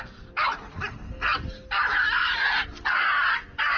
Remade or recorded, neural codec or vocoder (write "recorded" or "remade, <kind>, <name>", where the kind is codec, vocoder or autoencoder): recorded